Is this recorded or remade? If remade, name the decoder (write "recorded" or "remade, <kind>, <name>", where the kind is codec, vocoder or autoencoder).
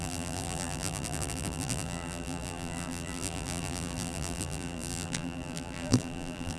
remade, vocoder, BigVGAN v2